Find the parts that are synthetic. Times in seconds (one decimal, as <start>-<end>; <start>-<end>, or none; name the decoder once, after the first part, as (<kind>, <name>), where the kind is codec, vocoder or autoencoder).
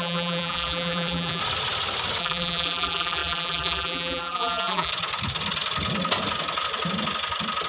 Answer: 0.0-1.4 (vocoder, BigVGAN v2); 2.2-4.9